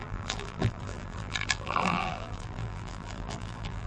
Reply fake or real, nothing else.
fake